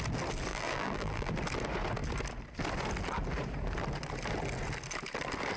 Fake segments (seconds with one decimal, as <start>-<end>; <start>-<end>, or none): 0.5-1.3